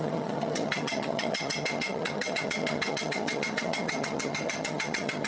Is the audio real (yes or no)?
no